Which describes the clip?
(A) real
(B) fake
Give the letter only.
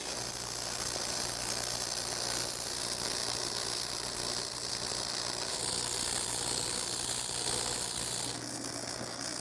A